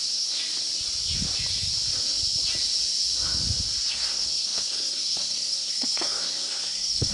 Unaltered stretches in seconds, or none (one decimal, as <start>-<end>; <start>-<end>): 0.4-3.9

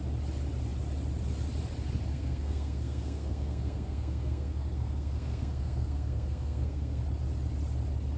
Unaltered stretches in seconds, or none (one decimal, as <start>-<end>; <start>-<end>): 0.0-2.1; 7.0-8.2